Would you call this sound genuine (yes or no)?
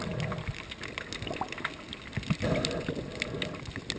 yes